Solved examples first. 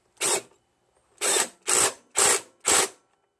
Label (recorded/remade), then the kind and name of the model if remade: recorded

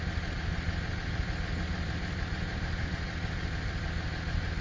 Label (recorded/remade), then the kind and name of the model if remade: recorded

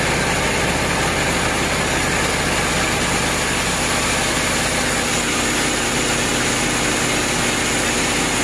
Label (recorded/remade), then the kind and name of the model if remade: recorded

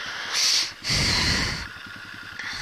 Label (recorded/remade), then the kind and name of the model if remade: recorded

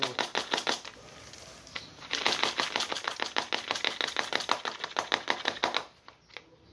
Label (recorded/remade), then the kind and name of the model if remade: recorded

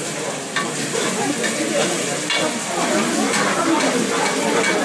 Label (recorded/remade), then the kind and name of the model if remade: recorded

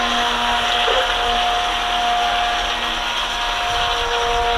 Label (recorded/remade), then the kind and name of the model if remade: recorded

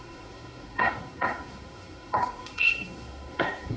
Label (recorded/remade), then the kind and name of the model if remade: remade, codec, SNAC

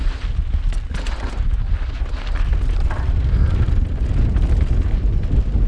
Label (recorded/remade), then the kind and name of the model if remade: recorded